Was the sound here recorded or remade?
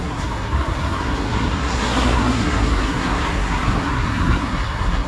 remade